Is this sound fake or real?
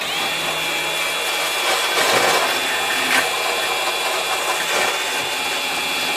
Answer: real